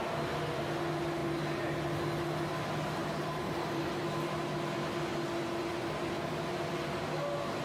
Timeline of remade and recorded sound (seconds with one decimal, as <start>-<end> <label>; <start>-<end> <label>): 0.0-1.2 recorded; 1.2-1.9 remade; 1.9-3.0 recorded; 3.0-4.0 remade; 4.0-7.6 recorded